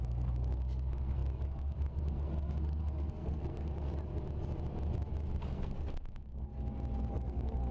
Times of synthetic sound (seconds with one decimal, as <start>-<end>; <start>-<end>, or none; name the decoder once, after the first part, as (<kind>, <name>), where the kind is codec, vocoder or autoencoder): 0.0-3.9 (codec, SNAC); 5.4-6.5; 7.1-7.7